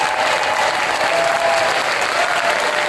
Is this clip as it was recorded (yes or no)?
yes